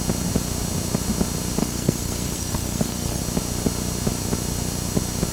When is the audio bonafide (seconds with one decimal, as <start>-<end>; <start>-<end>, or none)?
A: 0.0-1.6; 3.2-5.3